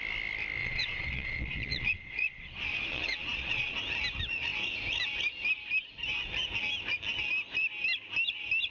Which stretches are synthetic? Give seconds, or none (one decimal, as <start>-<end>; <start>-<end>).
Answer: 0.6-3.8